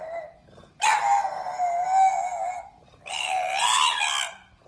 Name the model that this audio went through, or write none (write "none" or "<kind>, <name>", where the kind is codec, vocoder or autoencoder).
none